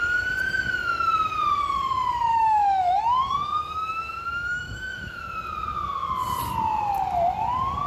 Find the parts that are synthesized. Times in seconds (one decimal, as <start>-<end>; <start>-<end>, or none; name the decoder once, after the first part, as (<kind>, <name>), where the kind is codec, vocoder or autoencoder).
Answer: 2.3-5.2 (autoencoder, DAC-VAE)

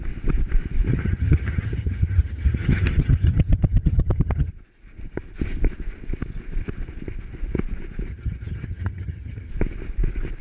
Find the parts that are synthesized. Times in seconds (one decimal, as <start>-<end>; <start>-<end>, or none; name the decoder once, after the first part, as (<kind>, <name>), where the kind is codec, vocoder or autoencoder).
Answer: 0.9-4.5 (vocoder, HiFi-GAN); 8.1-9.5

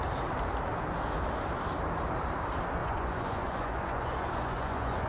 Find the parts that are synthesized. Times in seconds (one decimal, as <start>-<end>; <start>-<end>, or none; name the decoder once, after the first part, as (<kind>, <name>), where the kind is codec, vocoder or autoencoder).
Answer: 2.8-5.1 (vocoder, Vocos)

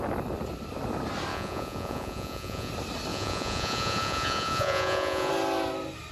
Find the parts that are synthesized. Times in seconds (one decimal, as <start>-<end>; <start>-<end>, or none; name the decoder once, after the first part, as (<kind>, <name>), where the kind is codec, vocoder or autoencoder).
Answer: 1.3-2.7 (vocoder, Vocos); 3.1-5.3

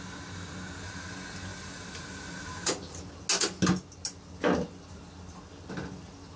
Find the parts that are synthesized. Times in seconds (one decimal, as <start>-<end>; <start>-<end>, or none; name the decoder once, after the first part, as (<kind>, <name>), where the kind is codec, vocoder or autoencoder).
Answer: 1.5-3.1 (vocoder, BigVGAN v2)

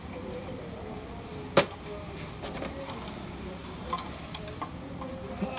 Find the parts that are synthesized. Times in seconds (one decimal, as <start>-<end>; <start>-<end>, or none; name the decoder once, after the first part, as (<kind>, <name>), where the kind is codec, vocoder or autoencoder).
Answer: none

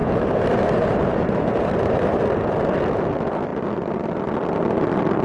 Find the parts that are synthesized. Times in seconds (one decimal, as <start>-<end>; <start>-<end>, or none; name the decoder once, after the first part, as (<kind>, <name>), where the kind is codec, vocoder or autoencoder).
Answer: 0.0-2.2 (vocoder, BigVGAN v2)

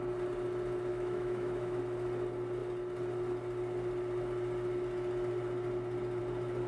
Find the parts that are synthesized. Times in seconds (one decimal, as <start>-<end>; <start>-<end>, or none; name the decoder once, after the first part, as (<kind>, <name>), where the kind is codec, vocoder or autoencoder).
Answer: 0.9-1.8 (autoencoder, DAC-VAE)